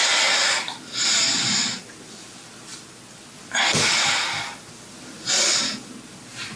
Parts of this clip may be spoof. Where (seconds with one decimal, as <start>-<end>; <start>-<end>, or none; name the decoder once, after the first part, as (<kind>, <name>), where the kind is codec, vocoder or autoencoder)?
none